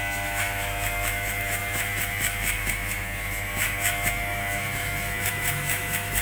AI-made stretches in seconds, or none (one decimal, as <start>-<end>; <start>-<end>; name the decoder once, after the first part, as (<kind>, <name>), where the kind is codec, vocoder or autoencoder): 0.0-6.2 (autoencoder, DAC-VAE)